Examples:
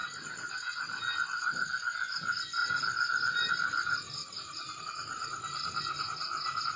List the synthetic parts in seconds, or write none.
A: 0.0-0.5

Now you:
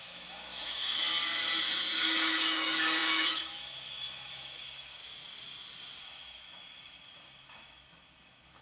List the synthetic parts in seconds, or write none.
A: 0.0-1.0; 1.6-5.0; 6.0-8.6

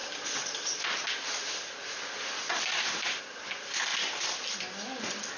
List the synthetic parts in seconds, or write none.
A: none

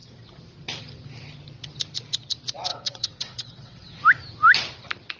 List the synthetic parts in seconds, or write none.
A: 2.7-4.0

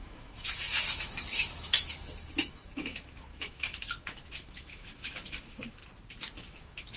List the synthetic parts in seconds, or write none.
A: 0.0-5.8; 6.4-7.0